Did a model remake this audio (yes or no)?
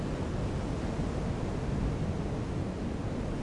no